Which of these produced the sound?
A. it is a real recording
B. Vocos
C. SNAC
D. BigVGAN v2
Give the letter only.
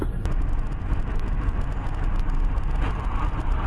A